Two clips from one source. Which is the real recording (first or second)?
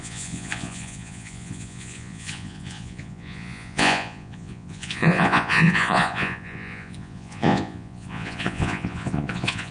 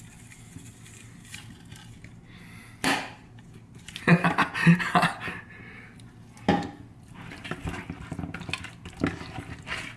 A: second